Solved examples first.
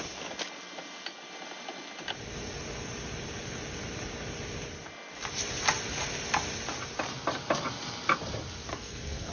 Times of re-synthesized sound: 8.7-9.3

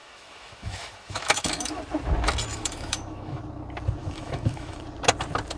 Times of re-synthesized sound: 0.0-1.8; 2.5-3.4; 4.0-4.8